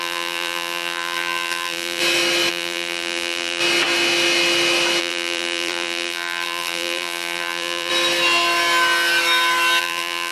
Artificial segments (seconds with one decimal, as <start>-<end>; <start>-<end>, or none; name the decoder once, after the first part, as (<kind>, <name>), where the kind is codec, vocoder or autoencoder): 0.0-2.0 (vocoder, BigVGAN v2); 2.5-3.6; 5.0-7.9; 9.8-10.3